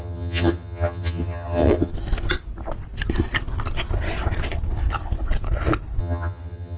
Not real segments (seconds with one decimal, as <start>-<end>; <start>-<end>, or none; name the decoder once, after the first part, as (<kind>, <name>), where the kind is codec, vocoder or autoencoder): 0.0-1.9 (vocoder, HiFi-GAN); 6.0-6.8